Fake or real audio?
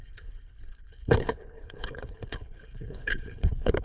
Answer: fake